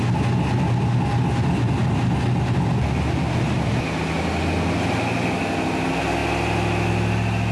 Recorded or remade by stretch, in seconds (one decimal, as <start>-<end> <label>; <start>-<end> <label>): 0.0-7.5 recorded